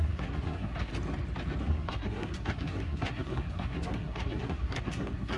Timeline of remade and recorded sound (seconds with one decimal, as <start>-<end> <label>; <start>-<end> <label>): 0.0-0.9 remade; 0.9-1.6 recorded; 1.6-5.4 remade